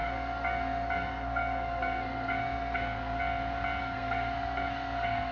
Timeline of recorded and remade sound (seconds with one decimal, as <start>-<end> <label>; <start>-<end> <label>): 0.0-3.2 remade; 3.2-3.8 recorded; 3.8-5.3 remade